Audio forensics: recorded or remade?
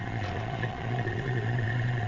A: remade